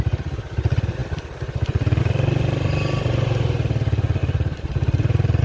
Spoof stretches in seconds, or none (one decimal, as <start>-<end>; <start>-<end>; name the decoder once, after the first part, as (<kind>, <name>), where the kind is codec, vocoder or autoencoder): 4.2-5.4 (vocoder, BigVGAN v2)